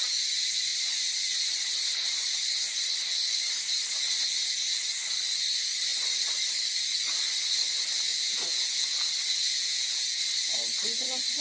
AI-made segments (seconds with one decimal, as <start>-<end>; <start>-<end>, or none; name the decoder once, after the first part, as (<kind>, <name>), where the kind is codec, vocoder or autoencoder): 8.1-9.1 (vocoder, Vocos); 9.5-10.2